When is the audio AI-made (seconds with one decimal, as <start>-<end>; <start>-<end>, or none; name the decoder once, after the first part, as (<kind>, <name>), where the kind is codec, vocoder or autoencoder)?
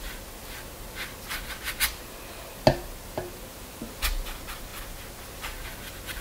none